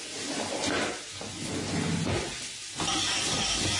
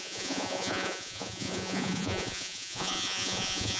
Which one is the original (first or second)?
first